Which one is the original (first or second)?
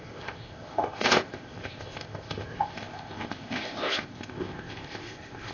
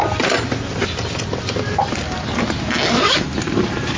second